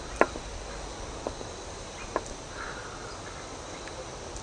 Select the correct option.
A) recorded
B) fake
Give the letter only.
A